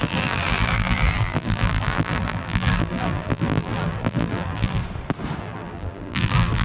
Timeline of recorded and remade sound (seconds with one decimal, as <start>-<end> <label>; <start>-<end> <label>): 0.0-4.8 remade; 4.8-5.4 recorded; 5.4-6.6 remade

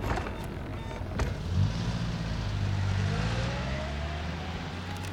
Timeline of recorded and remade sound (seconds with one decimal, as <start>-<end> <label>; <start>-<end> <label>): 0.0-5.1 recorded